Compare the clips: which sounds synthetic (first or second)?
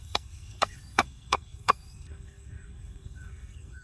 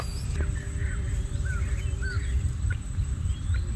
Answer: first